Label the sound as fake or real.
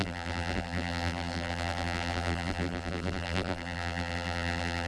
fake